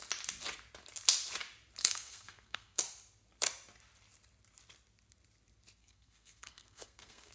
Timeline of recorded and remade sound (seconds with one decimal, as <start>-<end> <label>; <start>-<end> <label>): 0.0-1.8 recorded; 1.8-2.8 remade; 2.8-5.8 recorded; 5.8-7.3 remade